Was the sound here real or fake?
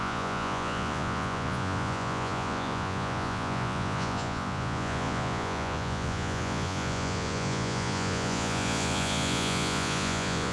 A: fake